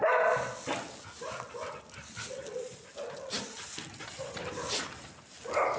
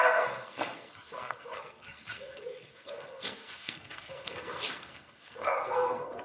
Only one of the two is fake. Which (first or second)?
second